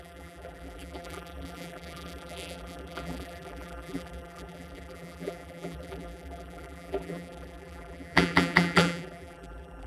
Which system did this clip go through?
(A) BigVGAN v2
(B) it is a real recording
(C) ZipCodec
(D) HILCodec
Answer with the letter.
A